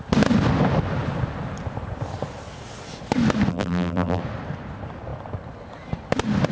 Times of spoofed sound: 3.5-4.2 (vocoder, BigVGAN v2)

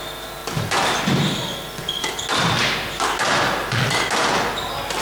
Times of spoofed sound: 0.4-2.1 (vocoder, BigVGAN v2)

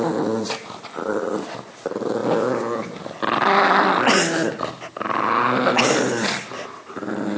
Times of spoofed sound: none

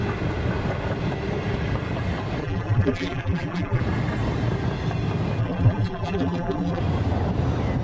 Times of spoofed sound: 2.4-3.8 (vocoder, BigVGAN v2); 5.4-6.8

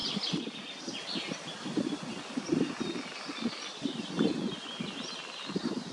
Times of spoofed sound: none